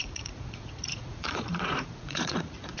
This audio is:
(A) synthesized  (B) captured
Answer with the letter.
A